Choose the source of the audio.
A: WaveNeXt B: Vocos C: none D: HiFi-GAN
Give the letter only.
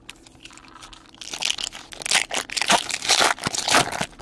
C